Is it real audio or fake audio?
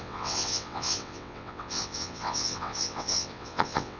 fake